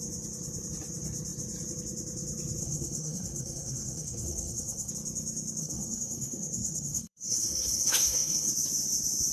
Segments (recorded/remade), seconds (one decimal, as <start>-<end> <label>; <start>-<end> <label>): 0.0-2.6 recorded; 2.6-4.9 remade; 4.9-5.6 recorded; 5.6-8.5 remade; 8.5-9.3 recorded